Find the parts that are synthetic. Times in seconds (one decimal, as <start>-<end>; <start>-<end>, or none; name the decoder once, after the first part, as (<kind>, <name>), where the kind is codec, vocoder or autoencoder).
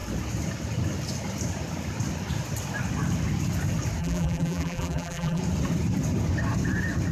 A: 4.0-5.4 (vocoder, BigVGAN v2)